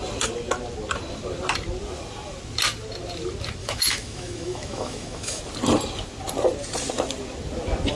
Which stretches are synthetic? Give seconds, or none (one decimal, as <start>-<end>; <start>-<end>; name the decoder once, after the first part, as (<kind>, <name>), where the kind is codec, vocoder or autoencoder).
3.6-5.4 (autoencoder, DAC-VAE)